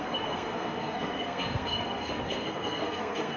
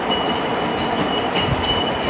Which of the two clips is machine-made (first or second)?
first